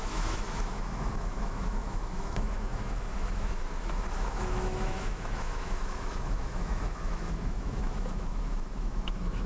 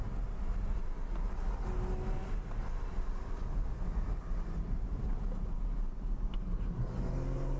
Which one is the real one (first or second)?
second